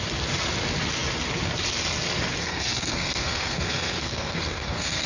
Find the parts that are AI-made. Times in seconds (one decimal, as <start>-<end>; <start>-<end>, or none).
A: 2.4-5.1